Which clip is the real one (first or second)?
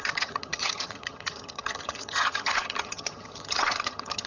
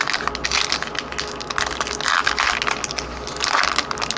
second